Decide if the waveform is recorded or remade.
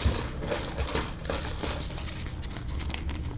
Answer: recorded